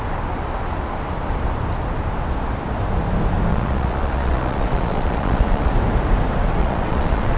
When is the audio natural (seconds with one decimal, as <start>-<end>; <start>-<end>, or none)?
0.0-3.5; 5.7-6.6